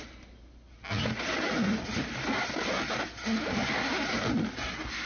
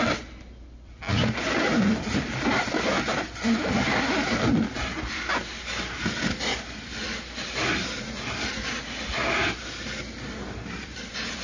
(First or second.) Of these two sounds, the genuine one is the first